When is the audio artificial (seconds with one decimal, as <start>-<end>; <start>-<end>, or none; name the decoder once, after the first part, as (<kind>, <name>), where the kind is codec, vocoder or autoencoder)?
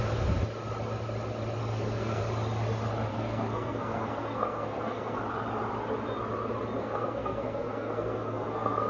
1.6-2.2 (codec, SNAC); 3.1-5.2; 6.8-8.9